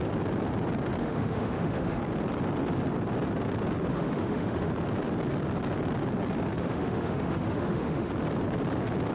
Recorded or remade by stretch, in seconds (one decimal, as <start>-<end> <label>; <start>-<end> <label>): 0.0-1.0 recorded; 1.0-2.0 remade; 2.0-3.9 recorded; 3.9-4.7 remade; 4.7-6.6 recorded; 6.6-8.1 remade; 8.1-9.1 recorded